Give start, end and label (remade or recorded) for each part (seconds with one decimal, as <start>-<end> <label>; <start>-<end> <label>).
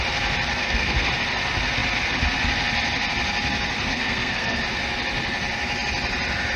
0.0-0.6 recorded; 0.6-1.1 remade; 1.1-3.9 recorded; 3.9-4.6 remade; 4.6-6.6 recorded